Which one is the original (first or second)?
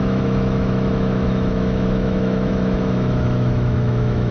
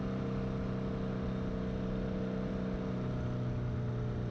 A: second